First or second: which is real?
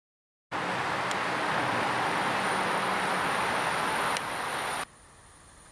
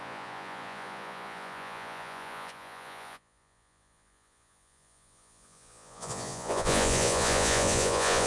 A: first